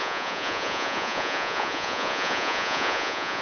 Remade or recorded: remade